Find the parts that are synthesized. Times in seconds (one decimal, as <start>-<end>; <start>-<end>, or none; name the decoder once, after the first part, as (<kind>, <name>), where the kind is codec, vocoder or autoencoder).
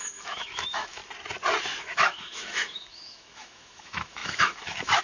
0.0-1.0 (autoencoder, DAC-VAE); 1.8-5.0